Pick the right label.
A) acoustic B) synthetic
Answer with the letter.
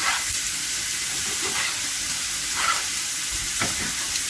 A